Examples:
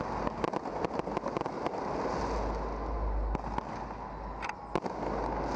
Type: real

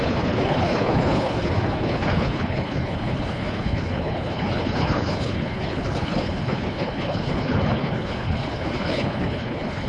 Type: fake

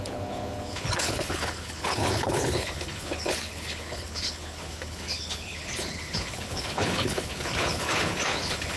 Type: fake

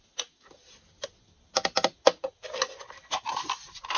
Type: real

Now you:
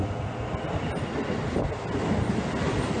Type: real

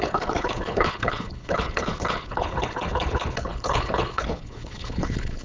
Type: fake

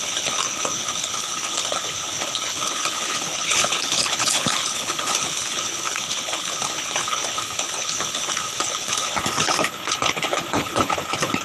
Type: fake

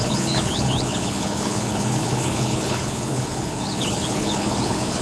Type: fake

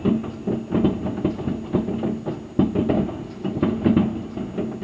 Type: real